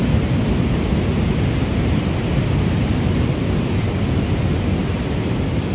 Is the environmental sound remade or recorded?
recorded